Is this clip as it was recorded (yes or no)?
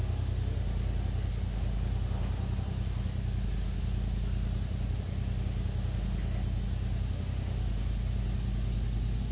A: yes